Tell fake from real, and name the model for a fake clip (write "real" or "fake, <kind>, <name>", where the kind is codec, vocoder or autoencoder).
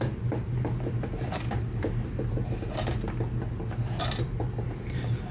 real